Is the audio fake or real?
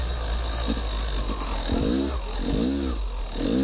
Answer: real